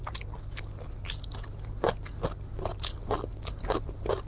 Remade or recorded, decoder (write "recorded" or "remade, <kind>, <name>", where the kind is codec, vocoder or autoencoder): recorded